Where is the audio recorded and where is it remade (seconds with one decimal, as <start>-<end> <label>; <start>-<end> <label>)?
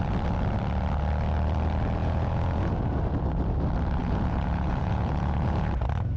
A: 0.0-2.0 recorded; 2.0-2.7 remade; 2.7-4.0 recorded; 4.0-5.7 remade; 5.7-6.2 recorded